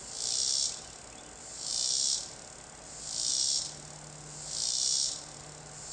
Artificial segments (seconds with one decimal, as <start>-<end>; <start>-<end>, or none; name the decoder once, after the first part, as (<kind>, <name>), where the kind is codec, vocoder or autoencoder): none